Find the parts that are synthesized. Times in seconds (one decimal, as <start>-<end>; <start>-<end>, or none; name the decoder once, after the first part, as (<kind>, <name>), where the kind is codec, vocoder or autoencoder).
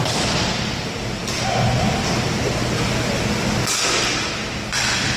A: none